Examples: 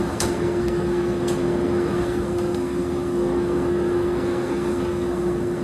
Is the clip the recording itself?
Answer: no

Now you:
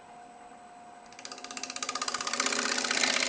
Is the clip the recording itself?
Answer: yes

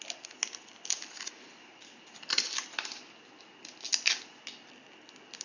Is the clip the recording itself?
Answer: yes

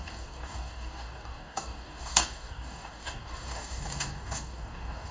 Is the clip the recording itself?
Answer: no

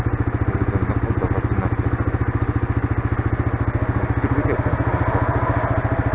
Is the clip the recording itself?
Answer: yes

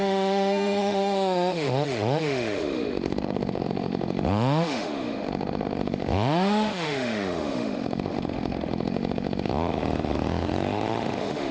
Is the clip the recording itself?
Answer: no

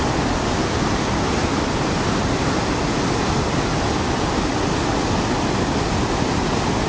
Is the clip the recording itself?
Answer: yes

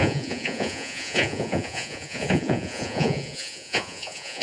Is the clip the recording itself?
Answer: no